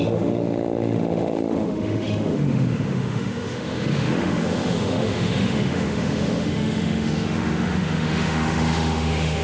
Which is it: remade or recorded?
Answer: remade